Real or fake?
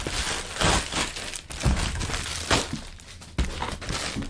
real